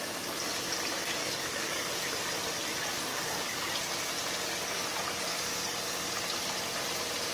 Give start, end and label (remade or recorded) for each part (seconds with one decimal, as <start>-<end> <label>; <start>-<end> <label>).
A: 0.0-1.2 recorded; 1.2-1.9 remade; 1.9-3.1 recorded; 3.1-3.7 remade; 3.7-5.3 recorded; 5.3-6.1 remade; 6.1-7.3 recorded